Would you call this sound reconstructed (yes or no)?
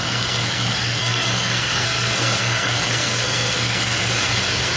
yes